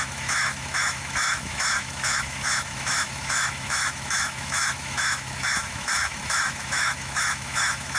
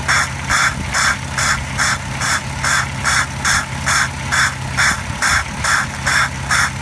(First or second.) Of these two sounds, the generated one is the first